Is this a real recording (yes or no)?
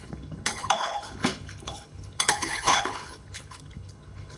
no